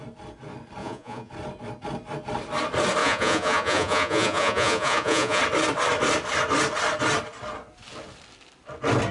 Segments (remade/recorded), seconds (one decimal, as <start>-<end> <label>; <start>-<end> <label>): 0.0-0.8 recorded; 0.8-1.3 remade; 1.3-3.0 recorded; 3.0-5.4 remade; 5.4-9.1 recorded